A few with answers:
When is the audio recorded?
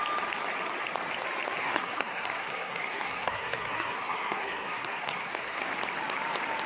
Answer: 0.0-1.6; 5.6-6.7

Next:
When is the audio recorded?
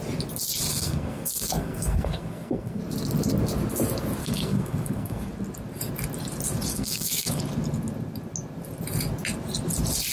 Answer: 0.0-0.7; 2.8-4.2; 5.3-6.7; 7.4-10.1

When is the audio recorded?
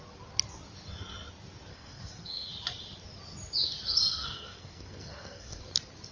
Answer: 0.0-1.7; 2.5-4.1; 5.6-6.1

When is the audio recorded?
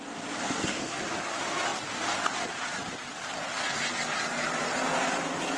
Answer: 0.0-0.4; 1.0-5.6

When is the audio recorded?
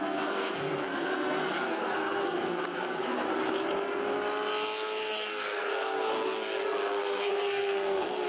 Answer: 3.3-5.1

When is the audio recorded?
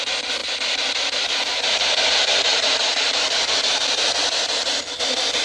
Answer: 0.0-5.4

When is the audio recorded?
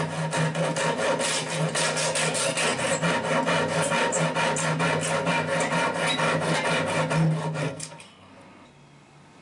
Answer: 0.0-7.6; 8.3-9.4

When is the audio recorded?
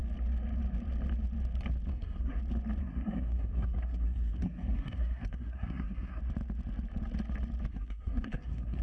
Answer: 0.0-1.9; 2.4-2.8; 6.2-7.7